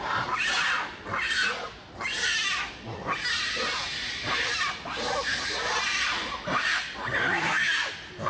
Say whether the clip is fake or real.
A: real